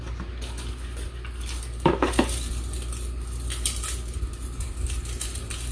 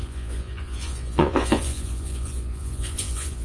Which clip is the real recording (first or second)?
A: first